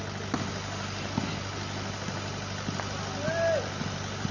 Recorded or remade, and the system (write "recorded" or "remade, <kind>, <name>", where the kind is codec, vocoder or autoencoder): recorded